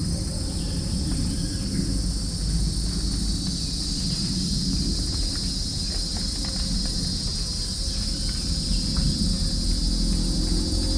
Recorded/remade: recorded